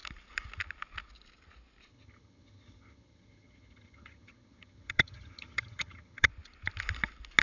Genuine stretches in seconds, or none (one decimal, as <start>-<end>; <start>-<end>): 0.0-1.9; 6.3-7.4